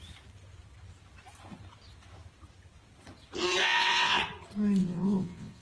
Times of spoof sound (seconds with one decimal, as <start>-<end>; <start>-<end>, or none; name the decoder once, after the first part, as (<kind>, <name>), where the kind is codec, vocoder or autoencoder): 3.6-4.2 (vocoder, WaveNeXt); 4.8-5.6